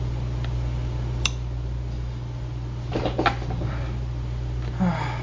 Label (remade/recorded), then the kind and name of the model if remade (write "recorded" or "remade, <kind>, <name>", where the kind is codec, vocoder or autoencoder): recorded